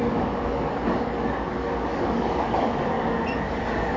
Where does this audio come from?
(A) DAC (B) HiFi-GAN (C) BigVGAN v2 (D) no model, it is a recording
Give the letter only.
A